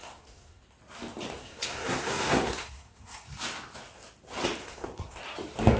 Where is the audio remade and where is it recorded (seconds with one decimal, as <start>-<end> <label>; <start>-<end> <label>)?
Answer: 0.0-0.6 remade; 0.6-1.4 recorded; 1.4-3.3 remade; 3.3-4.6 recorded; 4.6-5.2 remade; 5.2-5.8 recorded